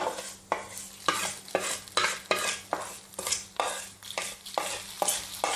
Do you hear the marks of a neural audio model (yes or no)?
no